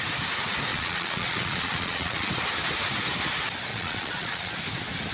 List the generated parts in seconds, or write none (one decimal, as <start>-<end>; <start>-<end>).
0.7-2.3; 3.7-4.5